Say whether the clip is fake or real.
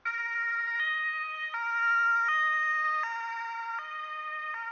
real